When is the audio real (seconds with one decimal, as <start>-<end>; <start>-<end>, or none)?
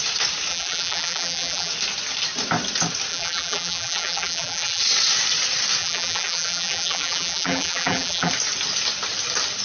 0.0-0.5; 1.7-3.1; 4.8-5.8; 8.3-9.6